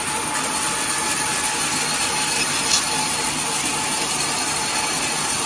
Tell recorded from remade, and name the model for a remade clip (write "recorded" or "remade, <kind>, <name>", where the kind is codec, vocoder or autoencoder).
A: recorded